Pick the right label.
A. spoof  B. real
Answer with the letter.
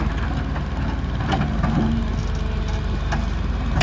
B